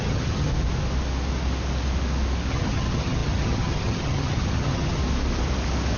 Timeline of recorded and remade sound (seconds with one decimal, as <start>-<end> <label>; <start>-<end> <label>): 0.0-0.5 remade; 0.5-2.5 recorded; 2.5-5.0 remade; 5.0-6.0 recorded